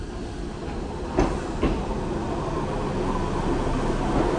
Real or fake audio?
real